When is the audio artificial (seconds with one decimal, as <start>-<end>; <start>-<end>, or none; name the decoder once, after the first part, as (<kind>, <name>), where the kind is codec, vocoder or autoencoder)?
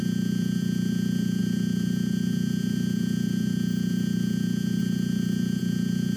none